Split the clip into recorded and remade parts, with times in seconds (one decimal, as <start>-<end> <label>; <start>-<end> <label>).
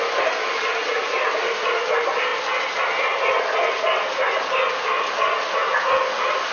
0.0-6.5 recorded